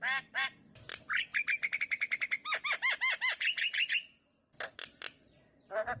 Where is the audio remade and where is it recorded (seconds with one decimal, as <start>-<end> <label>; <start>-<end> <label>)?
0.0-6.0 recorded